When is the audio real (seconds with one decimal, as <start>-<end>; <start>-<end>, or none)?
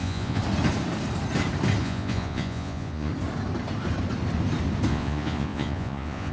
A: 0.4-1.8; 3.1-4.9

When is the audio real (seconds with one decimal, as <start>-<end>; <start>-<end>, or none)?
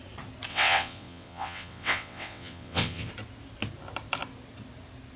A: 0.0-0.5; 3.1-5.2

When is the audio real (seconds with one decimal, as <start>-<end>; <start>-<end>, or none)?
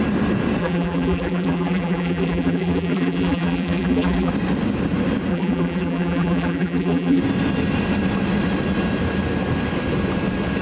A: 0.0-0.6; 4.3-5.3; 7.2-10.6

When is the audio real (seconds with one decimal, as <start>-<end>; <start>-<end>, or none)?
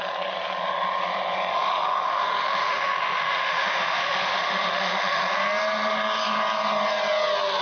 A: 0.0-1.5; 5.2-7.6